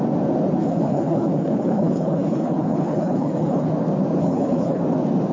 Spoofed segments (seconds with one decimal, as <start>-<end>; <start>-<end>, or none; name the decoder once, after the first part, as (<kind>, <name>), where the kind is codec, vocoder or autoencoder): 0.6-3.7 (codec, HILCodec); 4.2-4.8